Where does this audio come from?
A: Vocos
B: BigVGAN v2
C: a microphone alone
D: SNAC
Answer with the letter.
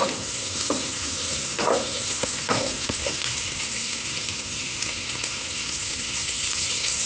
D